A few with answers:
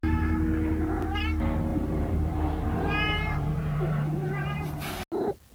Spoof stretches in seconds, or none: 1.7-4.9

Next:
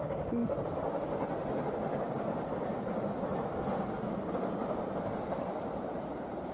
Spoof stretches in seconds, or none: 0.0-0.4; 4.3-6.5

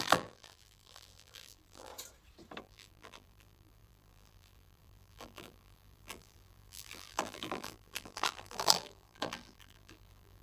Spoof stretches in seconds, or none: 0.0-1.9; 2.6-10.4

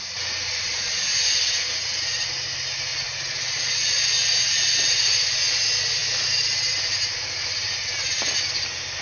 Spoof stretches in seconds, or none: none